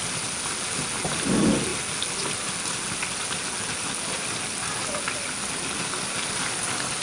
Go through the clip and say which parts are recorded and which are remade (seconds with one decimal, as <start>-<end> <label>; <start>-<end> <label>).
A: 0.0-7.0 recorded